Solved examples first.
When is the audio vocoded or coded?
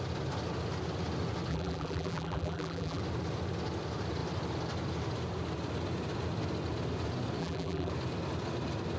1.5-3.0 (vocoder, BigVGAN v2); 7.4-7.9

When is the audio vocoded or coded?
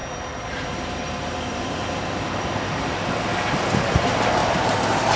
0.0-3.1 (vocoder, BigVGAN v2); 4.4-5.2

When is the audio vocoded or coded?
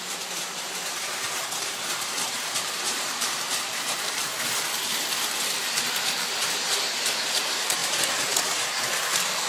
0.0-8.9 (vocoder, BigVGAN v2)